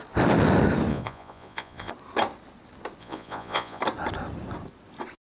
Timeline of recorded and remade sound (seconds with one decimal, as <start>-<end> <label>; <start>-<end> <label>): 0.0-0.9 recorded; 0.9-1.9 remade; 1.9-3.0 recorded; 3.0-3.8 remade; 3.8-5.3 recorded